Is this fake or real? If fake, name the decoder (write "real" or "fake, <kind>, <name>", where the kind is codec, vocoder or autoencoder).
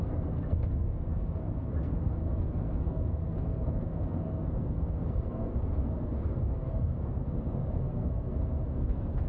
fake, codec, SNAC